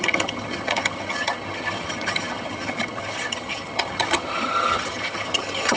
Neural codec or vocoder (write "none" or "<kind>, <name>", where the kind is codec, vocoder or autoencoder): vocoder, HiFi-GAN